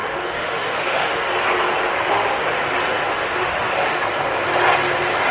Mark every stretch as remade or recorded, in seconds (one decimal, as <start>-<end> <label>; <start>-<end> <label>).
0.0-1.3 remade; 1.3-1.9 recorded; 1.9-2.4 remade; 2.4-3.1 recorded; 3.1-4.0 remade; 4.0-5.3 recorded